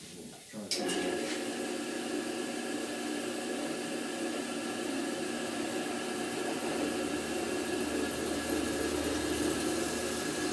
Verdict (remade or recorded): recorded